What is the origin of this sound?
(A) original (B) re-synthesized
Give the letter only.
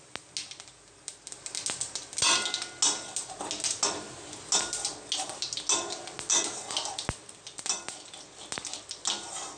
A